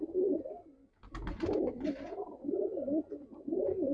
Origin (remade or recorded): recorded